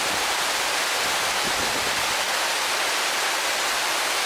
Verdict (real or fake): real